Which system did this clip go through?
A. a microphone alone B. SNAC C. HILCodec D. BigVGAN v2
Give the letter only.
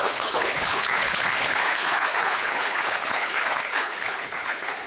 C